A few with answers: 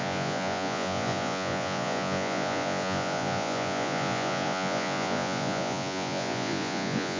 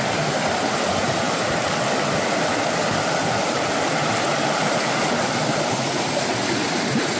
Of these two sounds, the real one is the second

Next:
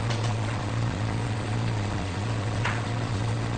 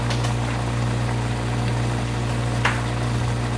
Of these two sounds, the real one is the second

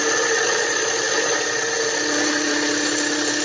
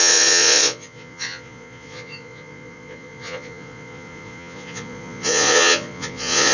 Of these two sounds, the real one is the first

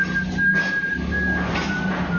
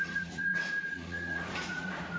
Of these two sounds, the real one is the first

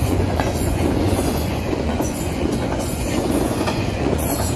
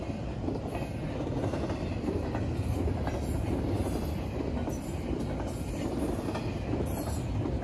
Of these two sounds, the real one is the second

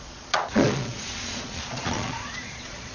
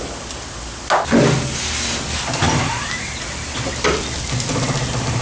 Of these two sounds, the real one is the second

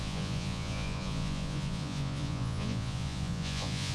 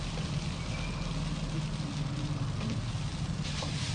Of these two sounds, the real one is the second